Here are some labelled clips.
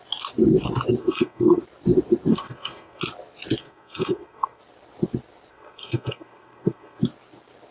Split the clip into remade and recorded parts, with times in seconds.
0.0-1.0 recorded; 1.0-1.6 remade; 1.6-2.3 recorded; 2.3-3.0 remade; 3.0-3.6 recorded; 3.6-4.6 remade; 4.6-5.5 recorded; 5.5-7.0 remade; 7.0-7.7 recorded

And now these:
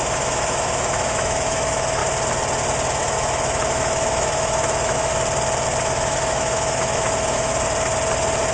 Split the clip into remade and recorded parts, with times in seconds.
0.0-2.0 remade; 2.0-3.0 recorded; 3.0-5.1 remade; 5.1-5.8 recorded; 5.8-7.5 remade; 7.5-8.5 recorded

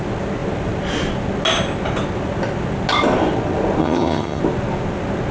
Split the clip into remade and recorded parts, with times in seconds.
0.0-3.8 recorded; 3.8-4.4 remade; 4.4-5.3 recorded